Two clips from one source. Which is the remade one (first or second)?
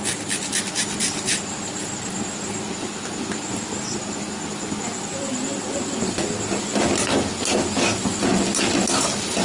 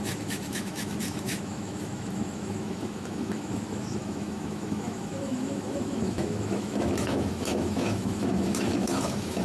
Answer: second